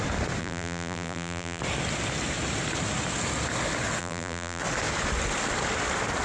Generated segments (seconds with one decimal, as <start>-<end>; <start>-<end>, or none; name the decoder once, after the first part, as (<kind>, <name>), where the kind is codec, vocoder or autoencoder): 0.4-1.6 (vocoder, BigVGAN v2); 4.0-4.6